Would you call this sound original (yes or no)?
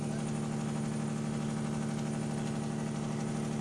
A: yes